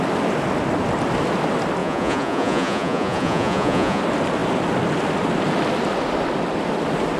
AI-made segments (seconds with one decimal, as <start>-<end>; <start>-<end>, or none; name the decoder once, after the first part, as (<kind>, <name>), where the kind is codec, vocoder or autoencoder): 1.8-4.0 (vocoder, Vocos)